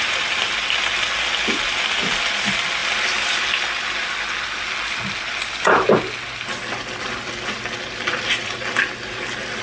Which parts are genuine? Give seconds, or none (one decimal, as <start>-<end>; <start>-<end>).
0.0-9.6